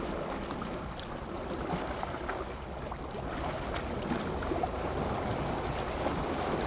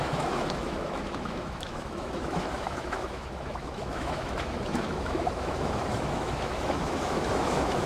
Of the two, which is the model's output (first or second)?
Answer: second